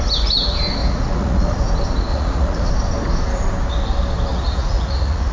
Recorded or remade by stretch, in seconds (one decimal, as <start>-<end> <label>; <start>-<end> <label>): 0.0-0.8 recorded; 0.8-1.7 remade; 1.7-2.1 recorded; 2.1-2.7 remade; 2.7-4.3 recorded; 4.3-5.3 remade